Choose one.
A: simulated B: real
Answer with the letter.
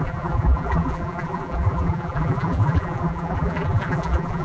A